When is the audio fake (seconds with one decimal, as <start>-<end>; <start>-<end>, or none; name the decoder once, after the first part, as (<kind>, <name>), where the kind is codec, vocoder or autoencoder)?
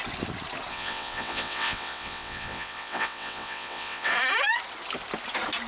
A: 0.7-4.1 (vocoder, WaveNeXt)